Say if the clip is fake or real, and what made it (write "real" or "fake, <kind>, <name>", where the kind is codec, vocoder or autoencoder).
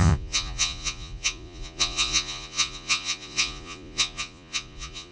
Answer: fake, vocoder, Vocos